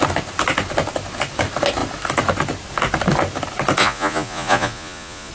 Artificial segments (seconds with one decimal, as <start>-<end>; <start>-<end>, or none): 3.8-5.3

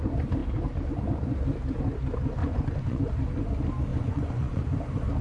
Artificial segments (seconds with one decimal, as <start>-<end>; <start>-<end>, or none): 2.4-3.0; 3.9-4.6

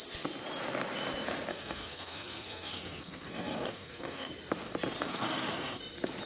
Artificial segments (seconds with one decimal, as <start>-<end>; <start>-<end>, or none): 1.5-4.3; 5.1-5.8

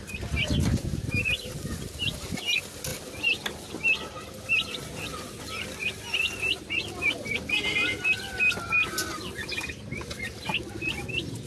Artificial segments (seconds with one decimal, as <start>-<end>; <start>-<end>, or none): none

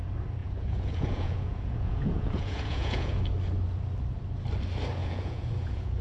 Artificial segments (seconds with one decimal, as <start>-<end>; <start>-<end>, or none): 0.4-3.2; 5.0-6.0